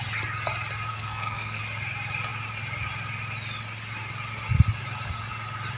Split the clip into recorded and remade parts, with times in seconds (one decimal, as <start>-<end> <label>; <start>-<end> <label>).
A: 0.0-0.9 recorded; 0.9-1.6 remade; 1.6-5.8 recorded